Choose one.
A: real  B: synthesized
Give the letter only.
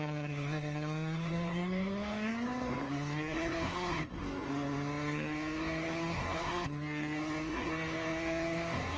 B